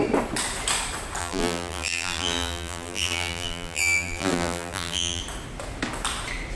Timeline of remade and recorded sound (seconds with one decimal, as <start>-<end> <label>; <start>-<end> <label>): 0.0-1.2 recorded; 1.2-5.2 remade; 5.2-6.6 recorded